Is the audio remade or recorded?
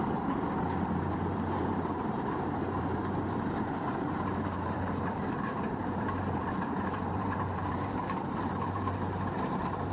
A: remade